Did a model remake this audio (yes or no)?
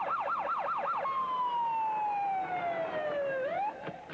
no